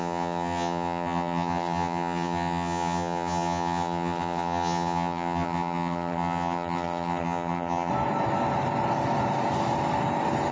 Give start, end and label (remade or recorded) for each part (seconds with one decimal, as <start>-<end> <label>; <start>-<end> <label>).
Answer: 0.0-7.9 remade; 7.9-10.5 recorded